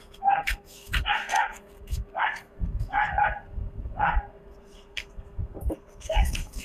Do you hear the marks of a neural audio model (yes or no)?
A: yes